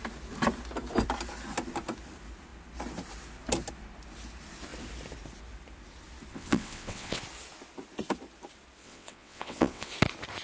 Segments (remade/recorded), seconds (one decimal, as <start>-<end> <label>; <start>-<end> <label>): 0.0-6.3 recorded; 6.3-7.2 remade; 7.2-8.8 recorded; 8.8-9.9 remade; 9.9-10.4 recorded